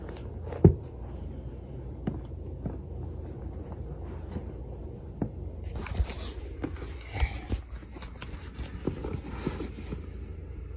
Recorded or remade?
recorded